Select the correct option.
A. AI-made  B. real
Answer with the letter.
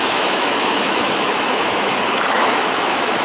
A